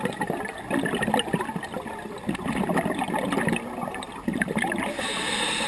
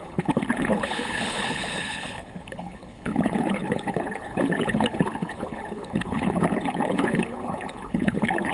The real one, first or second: first